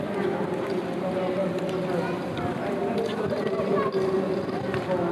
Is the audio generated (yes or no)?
no